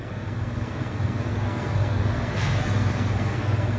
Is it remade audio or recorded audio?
remade